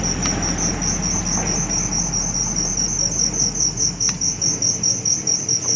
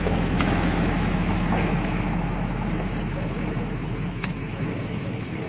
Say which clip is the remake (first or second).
second